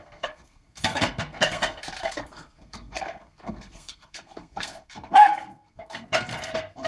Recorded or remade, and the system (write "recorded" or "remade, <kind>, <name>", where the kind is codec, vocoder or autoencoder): remade, codec, SNAC